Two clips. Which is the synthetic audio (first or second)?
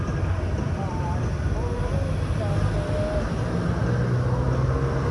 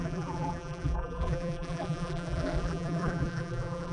second